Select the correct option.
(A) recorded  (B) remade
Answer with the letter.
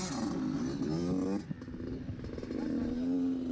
A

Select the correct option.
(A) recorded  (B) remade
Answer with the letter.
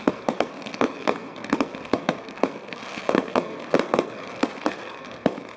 B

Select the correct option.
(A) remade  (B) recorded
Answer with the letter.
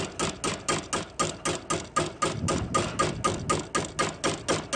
B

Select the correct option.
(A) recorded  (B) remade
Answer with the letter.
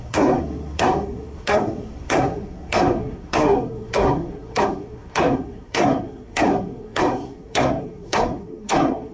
B